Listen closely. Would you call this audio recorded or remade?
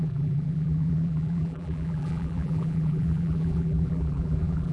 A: remade